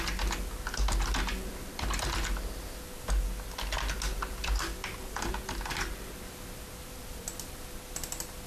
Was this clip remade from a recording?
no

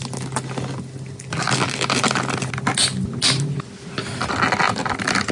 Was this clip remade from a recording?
no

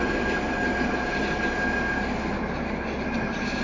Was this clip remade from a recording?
no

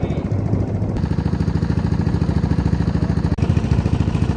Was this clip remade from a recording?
no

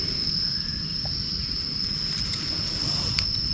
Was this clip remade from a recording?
no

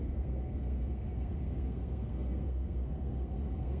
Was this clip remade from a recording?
yes